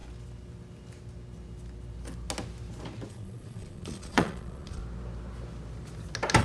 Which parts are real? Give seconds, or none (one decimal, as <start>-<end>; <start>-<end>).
0.0-3.1; 4.8-6.4